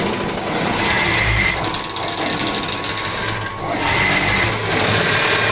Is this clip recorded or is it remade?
recorded